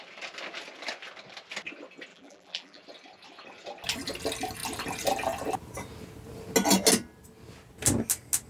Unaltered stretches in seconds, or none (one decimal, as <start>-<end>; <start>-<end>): 0.0-2.1; 2.8-8.5